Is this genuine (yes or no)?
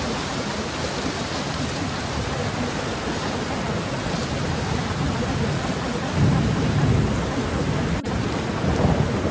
yes